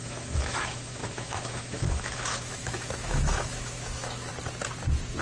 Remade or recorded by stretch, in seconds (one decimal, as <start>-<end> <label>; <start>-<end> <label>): 0.0-4.3 remade; 4.3-5.2 recorded